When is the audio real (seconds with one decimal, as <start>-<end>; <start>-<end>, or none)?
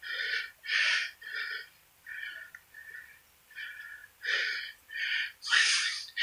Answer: 0.0-6.2